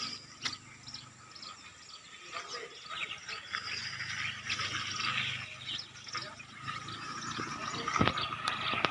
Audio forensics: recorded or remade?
recorded